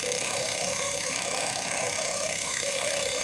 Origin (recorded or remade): remade